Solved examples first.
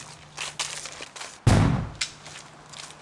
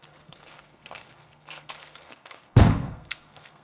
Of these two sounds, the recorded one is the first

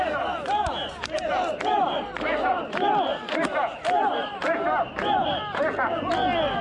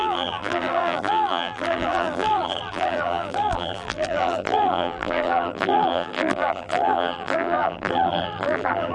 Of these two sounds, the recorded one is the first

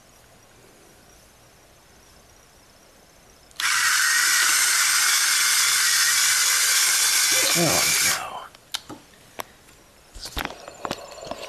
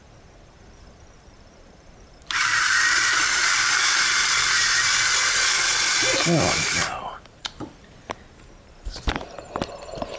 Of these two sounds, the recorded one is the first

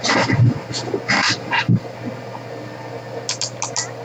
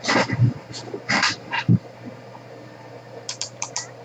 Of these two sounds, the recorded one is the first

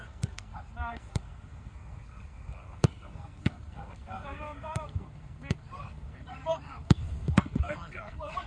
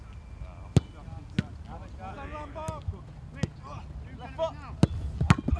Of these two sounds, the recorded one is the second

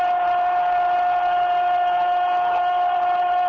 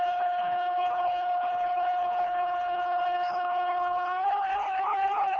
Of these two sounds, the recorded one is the first